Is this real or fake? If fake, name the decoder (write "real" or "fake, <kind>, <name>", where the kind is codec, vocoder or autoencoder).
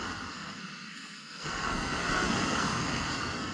fake, codec, SNAC